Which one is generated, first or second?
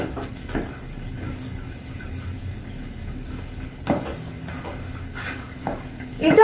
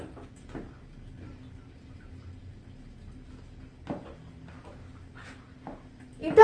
first